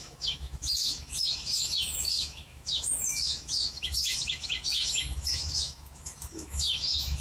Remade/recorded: remade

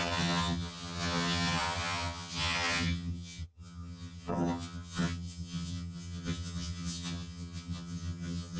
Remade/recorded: remade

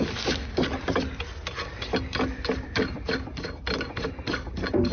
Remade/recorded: recorded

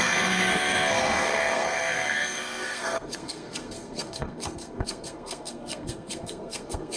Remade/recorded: remade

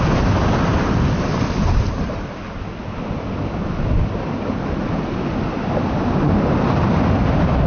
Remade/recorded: recorded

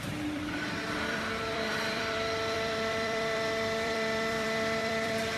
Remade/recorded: remade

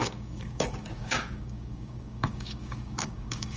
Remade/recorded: remade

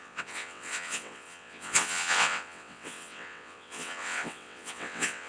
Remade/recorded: remade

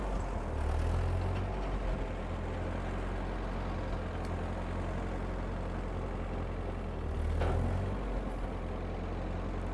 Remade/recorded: recorded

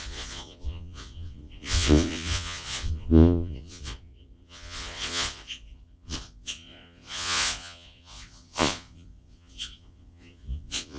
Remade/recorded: remade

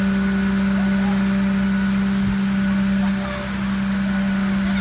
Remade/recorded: recorded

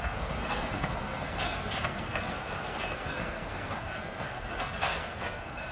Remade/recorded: remade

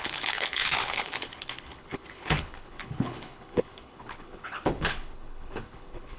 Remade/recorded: remade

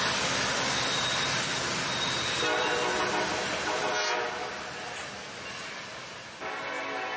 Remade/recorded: recorded